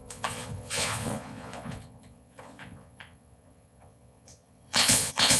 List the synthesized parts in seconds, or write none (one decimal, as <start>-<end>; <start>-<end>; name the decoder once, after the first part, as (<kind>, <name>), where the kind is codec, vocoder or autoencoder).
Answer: 0.0-5.4 (vocoder, Vocos)